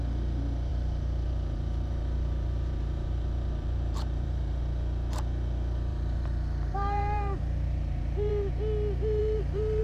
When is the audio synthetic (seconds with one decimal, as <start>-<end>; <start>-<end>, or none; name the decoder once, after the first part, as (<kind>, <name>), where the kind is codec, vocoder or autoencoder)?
0.7-4.6 (vocoder, BigVGAN v2); 5.9-8.5; 9.2-9.8